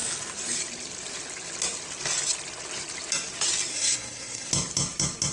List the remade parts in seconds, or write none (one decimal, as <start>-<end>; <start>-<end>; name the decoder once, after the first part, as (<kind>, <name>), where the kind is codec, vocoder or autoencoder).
3.7-4.5 (codec, SNAC)